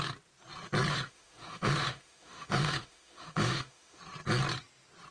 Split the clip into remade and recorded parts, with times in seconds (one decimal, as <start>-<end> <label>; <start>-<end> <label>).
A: 0.0-0.9 recorded; 0.9-4.0 remade; 4.0-5.1 recorded